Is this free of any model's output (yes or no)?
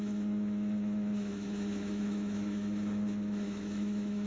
no